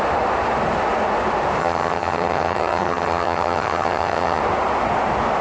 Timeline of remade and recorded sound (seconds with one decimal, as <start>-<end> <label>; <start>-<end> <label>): 0.0-1.6 recorded; 1.6-4.4 remade; 4.4-5.4 recorded